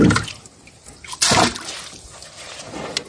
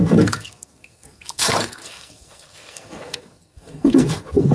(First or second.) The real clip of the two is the first